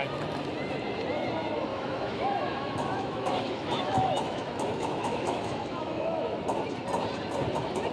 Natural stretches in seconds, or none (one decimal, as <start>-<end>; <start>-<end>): 0.0-1.7; 6.4-7.9